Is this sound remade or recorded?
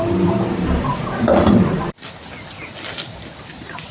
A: recorded